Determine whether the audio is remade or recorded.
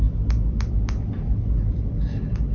recorded